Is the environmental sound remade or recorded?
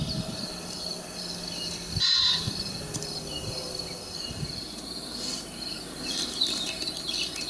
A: recorded